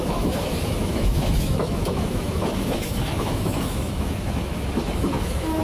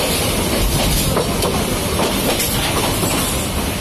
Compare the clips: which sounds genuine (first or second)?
second